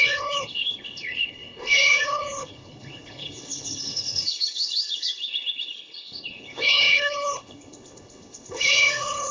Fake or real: fake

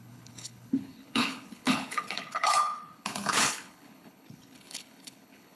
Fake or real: fake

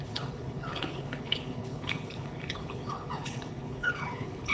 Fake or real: fake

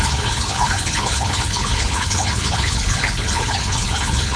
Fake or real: fake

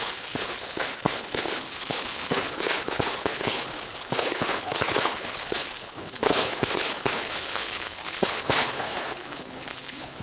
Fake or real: fake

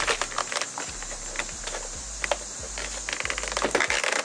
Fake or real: real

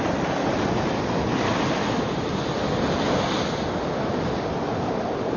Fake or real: real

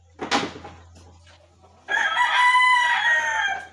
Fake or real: real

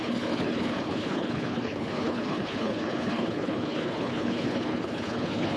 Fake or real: fake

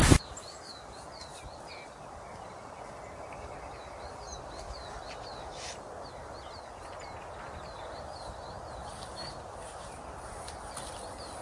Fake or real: real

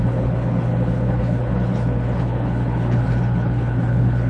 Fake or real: fake